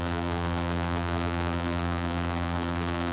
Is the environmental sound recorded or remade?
remade